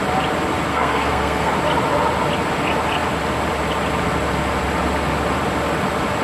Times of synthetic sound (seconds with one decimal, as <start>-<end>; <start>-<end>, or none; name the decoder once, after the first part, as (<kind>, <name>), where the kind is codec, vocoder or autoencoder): 0.7-1.5 (codec, SNAC)